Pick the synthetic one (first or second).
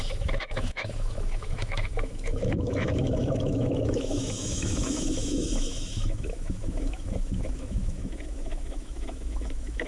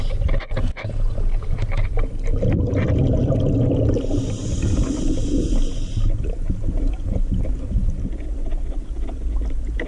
first